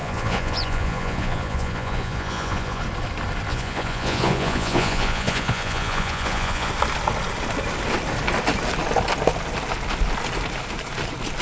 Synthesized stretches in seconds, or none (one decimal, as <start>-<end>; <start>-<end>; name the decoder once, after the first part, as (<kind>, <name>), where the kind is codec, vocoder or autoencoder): 0.0-2.8 (vocoder, Vocos); 3.5-6.7